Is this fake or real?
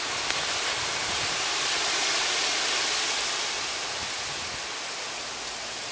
real